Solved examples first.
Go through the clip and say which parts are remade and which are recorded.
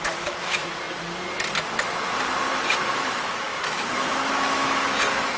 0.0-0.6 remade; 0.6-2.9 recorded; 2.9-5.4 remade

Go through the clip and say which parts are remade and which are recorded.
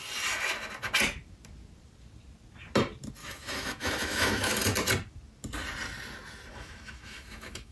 0.0-3.2 recorded; 3.2-4.6 remade; 4.6-6.5 recorded; 6.5-7.7 remade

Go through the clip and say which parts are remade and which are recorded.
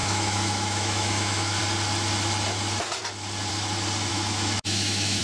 0.0-1.6 remade; 1.6-4.1 recorded; 4.1-5.2 remade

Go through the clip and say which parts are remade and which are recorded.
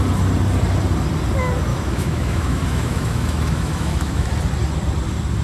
0.0-1.7 recorded; 1.7-4.3 remade; 4.3-5.4 recorded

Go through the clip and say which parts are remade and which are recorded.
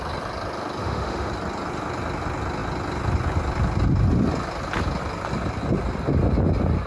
0.0-0.8 recorded; 0.8-1.3 remade; 1.3-6.9 recorded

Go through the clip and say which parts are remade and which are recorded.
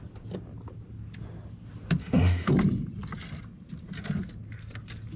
0.0-2.0 recorded; 2.0-2.5 remade; 2.5-5.2 recorded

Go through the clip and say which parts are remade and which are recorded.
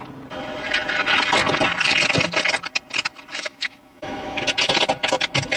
0.0-3.3 recorded; 3.3-4.4 remade; 4.4-5.6 recorded